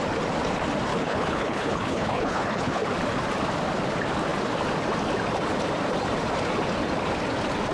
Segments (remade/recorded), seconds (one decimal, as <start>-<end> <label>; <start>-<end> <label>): 0.0-0.9 recorded; 0.9-2.8 remade; 2.8-7.7 recorded